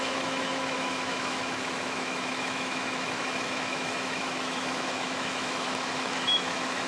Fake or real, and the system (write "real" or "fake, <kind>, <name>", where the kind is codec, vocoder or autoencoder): fake, autoencoder, DAC-VAE